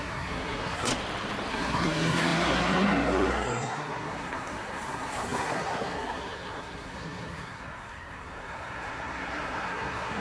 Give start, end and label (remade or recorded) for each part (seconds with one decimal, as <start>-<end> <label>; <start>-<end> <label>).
0.0-0.9 remade; 0.9-1.5 recorded; 1.5-10.2 remade